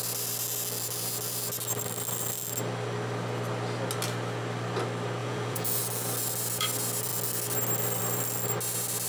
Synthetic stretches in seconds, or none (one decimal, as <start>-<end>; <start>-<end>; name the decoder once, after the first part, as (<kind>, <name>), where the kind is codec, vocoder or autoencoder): 5.2-5.8 (vocoder, Vocos)